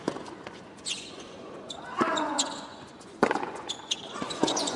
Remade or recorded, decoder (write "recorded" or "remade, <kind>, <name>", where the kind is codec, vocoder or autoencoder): remade, vocoder, Vocos